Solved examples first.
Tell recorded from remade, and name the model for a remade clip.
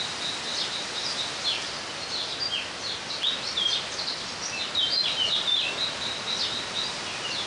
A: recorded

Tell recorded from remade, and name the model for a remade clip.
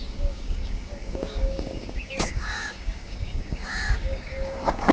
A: remade, codec, DAC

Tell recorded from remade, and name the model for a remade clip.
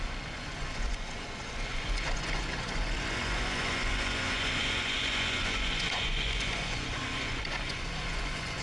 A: remade, vocoder, Vocos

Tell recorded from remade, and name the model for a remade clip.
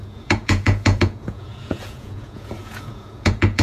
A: remade, vocoder, Vocos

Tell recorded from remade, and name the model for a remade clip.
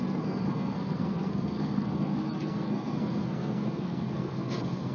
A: remade, codec, SNAC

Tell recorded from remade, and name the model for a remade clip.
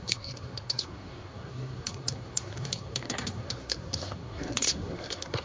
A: remade, codec, SNAC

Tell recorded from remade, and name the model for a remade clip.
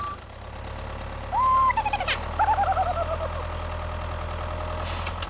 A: recorded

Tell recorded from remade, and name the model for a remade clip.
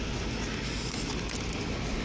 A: recorded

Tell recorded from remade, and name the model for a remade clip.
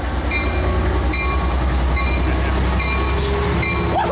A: recorded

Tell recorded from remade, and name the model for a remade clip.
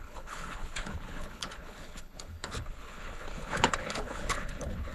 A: remade, codec, HILCodec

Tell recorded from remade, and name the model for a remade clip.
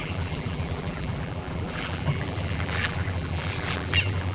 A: remade, vocoder, BigVGAN v2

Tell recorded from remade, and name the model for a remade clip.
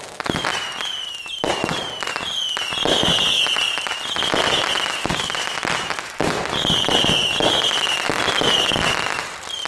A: recorded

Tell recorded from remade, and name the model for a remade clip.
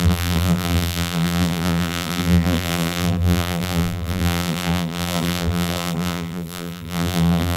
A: remade, vocoder, BigVGAN v2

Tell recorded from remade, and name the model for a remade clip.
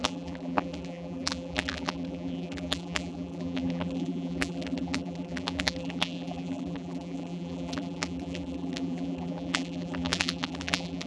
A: remade, vocoder, BigVGAN v2